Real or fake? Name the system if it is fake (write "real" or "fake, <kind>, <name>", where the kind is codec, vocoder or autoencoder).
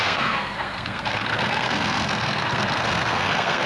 fake, codec, SNAC